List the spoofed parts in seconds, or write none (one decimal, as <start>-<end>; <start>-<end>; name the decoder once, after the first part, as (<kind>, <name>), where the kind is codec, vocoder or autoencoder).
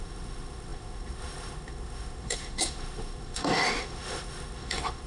0.0-5.1 (autoencoder, DAC-VAE)